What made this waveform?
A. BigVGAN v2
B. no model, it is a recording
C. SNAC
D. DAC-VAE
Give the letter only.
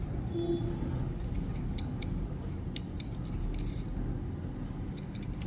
B